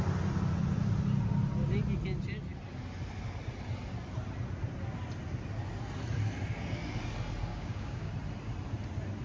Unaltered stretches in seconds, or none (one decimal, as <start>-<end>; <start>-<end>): 0.0-7.5; 8.1-9.2